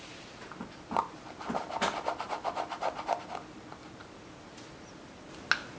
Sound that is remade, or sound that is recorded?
recorded